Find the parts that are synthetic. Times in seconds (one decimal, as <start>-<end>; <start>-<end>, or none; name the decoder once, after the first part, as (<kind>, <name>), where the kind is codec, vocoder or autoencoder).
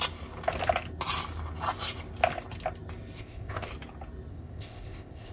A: 3.2-3.7 (codec, ZipCodec); 4.3-5.3